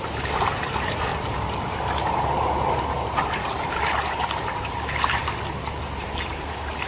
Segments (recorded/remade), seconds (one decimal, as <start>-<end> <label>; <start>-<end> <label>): 0.0-6.9 remade